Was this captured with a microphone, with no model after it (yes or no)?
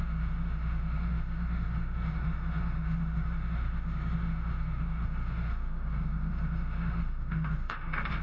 no